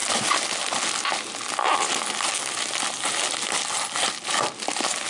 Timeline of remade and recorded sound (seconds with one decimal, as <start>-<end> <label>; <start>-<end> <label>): 0.0-5.1 recorded